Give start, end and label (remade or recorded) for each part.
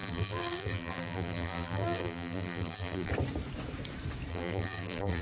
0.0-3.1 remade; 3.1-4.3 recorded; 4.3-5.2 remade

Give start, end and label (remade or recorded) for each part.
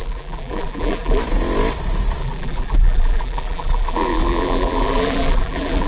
0.0-1.2 remade; 1.2-2.2 recorded; 2.2-5.9 remade